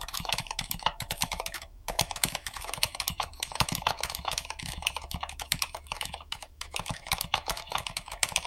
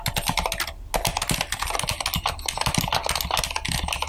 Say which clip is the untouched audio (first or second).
second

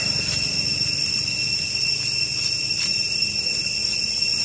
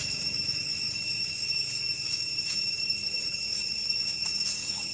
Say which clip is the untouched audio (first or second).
first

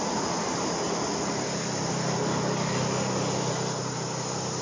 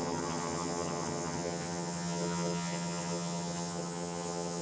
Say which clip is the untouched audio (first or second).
first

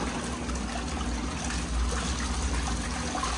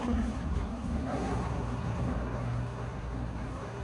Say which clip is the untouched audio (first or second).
first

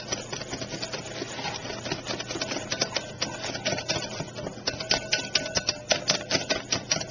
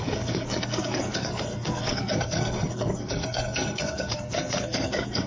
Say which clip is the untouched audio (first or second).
first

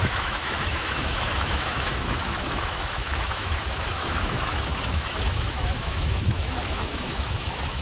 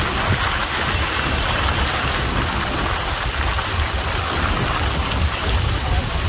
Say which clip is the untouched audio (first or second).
second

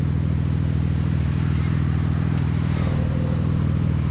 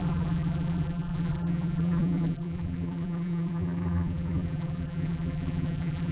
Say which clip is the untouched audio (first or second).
first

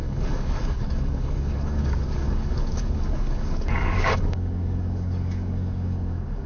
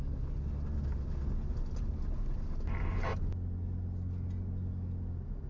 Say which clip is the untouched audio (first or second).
second